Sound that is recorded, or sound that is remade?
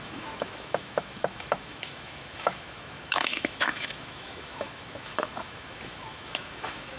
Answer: remade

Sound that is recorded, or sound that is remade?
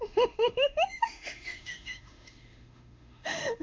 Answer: remade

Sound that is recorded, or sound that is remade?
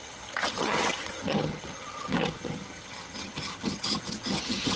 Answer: remade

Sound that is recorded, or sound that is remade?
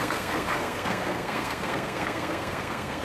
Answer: remade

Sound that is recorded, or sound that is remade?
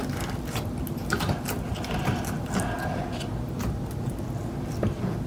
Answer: recorded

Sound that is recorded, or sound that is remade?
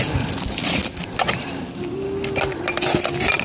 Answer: recorded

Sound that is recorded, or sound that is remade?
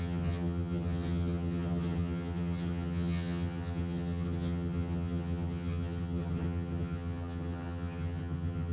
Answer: remade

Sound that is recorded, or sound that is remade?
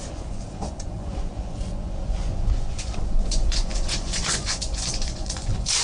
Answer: remade